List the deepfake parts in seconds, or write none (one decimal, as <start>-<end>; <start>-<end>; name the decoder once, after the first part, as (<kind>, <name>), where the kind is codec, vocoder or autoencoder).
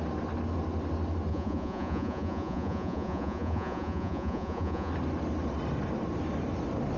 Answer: 1.3-4.9 (vocoder, Vocos)